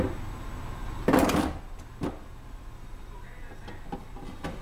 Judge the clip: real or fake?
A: real